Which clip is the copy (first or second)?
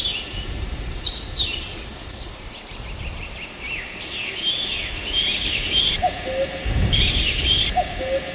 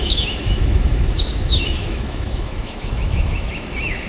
second